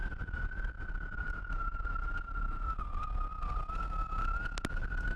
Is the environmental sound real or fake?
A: real